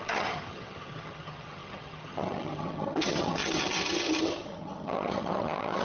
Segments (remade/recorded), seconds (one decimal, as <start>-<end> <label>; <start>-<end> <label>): 0.0-5.8 remade